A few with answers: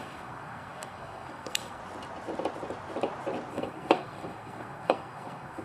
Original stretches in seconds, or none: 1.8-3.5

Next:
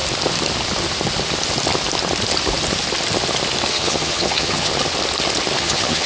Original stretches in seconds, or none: 0.0-3.7; 4.7-5.6

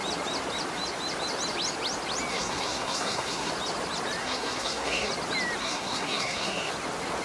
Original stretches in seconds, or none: 0.0-2.3; 3.5-4.2; 5.1-5.6; 6.7-7.2

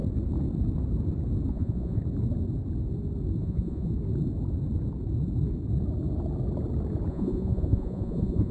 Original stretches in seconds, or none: 0.0-1.5; 2.0-3.4; 3.9-7.1

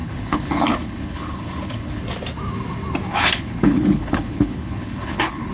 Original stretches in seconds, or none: 2.0-3.1

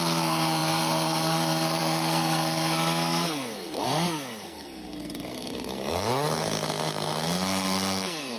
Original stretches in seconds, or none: none

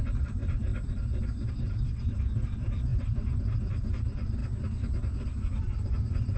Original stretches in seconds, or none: 0.7-1.5; 4.4-5.6

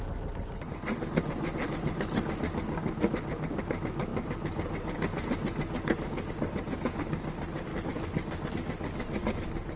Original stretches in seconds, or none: 0.0-9.8